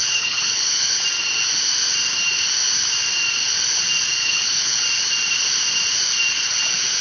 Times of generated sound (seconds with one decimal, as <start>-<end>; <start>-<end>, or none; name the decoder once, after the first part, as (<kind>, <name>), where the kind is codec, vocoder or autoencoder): 0.0-1.0 (codec, HILCodec); 4.2-4.8